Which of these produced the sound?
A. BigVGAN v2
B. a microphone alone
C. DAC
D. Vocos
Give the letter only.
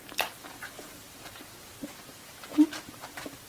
A